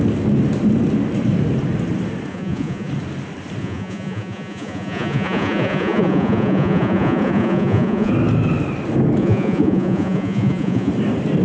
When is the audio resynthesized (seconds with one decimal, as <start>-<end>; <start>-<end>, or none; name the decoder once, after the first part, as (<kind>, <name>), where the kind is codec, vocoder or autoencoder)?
2.3-2.9 (vocoder, Vocos); 3.6-8.1; 9.2-10.9